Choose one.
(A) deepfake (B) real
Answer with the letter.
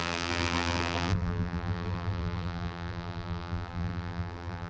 A